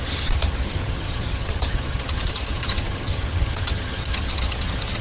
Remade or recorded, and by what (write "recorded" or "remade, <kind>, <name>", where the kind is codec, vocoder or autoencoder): remade, vocoder, HiFi-GAN